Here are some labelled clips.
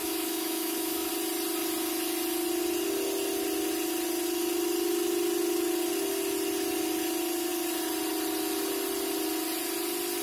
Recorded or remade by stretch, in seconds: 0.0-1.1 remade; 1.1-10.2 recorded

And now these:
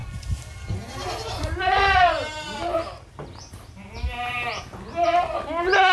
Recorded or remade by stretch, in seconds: 0.0-5.9 recorded

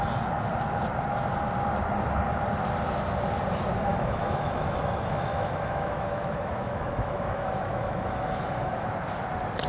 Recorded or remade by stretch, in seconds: 0.0-3.9 recorded; 3.9-8.7 remade; 8.7-9.7 recorded

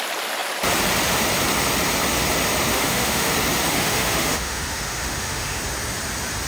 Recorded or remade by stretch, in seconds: 0.0-2.7 recorded; 2.7-3.3 remade; 3.3-3.7 recorded; 3.7-5.6 remade; 5.6-6.5 recorded

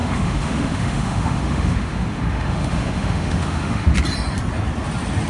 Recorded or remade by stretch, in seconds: 0.0-3.9 remade; 3.9-5.3 recorded

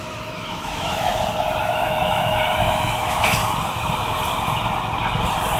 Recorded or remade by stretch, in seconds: 0.0-1.1 remade; 1.1-1.6 recorded; 1.6-3.4 remade; 3.4-5.6 recorded

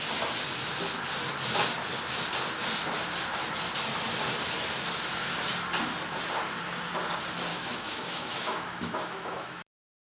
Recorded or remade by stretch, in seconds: 0.0-7.5 recorded; 7.5-10.2 remade

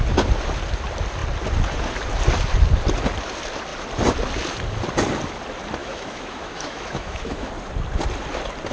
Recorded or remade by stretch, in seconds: 0.0-5.8 recorded; 5.8-7.5 remade; 7.5-8.7 recorded